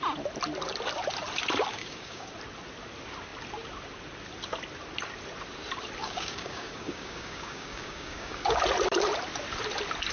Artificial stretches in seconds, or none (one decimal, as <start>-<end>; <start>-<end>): 1.7-2.3; 6.0-8.6